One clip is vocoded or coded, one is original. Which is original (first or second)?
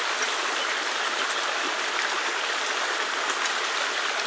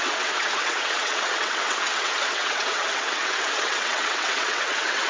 first